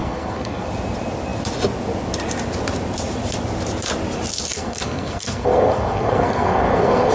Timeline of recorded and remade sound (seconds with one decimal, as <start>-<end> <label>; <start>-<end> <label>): 0.0-0.7 remade; 0.7-4.5 recorded; 4.5-7.1 remade